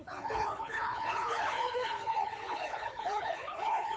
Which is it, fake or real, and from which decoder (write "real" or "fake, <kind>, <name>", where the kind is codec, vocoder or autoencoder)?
fake, codec, HILCodec